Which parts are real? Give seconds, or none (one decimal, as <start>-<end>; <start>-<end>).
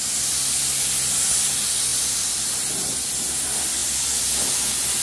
0.0-5.0